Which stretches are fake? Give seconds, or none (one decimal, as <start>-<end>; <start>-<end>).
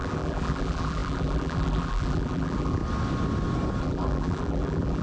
0.0-2.8; 3.8-5.0